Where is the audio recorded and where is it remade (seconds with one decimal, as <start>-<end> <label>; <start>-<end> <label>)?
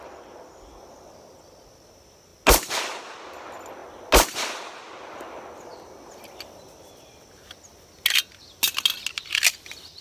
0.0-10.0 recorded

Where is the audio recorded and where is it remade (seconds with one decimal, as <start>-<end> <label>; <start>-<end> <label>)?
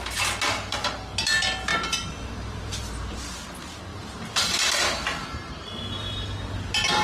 0.0-1.7 recorded; 1.7-3.2 remade; 3.2-3.9 recorded; 3.9-5.9 remade; 5.9-7.0 recorded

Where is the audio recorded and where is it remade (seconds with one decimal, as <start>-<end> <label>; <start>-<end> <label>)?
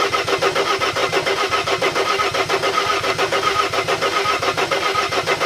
0.0-1.0 recorded; 1.0-2.2 remade; 2.2-5.5 recorded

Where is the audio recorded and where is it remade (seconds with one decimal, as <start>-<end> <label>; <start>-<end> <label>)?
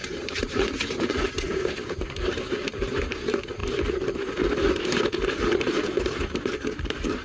0.0-3.6 remade; 3.6-5.0 recorded; 5.0-7.2 remade